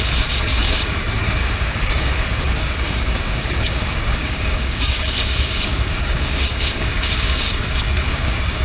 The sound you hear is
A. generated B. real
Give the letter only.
A